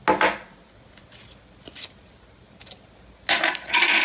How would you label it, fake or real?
real